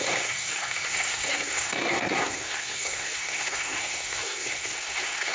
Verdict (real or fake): fake